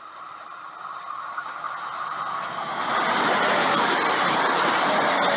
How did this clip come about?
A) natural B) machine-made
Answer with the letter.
A